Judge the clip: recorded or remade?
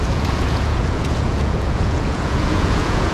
remade